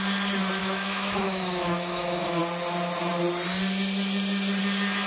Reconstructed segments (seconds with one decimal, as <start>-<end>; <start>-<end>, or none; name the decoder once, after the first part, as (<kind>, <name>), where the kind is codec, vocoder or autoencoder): 0.6-2.4 (autoencoder, DAC-VAE)